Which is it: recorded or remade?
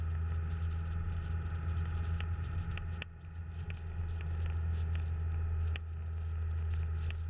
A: recorded